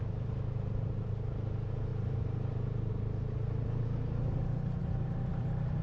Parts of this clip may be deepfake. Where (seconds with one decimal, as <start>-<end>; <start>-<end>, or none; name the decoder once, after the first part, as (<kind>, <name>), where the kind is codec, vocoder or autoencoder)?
1.9-2.9 (vocoder, BigVGAN v2); 4.8-5.8